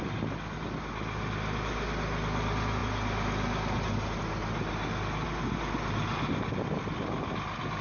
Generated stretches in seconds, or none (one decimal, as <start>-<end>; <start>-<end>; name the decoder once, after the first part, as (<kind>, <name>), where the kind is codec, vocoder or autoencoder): none